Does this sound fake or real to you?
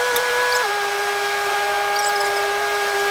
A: real